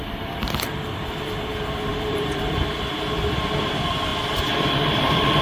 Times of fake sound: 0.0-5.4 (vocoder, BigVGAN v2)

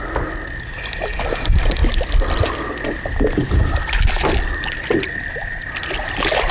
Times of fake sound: none

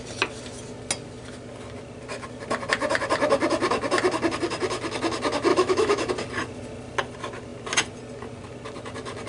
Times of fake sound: 5.5-6.1 (autoencoder, DAC-VAE)

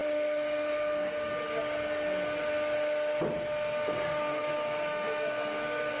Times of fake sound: 0.0-1.3 (codec, DAC); 3.9-6.0

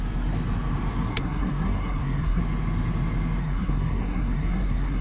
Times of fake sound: 1.1-2.4 (codec, SNAC); 3.4-5.0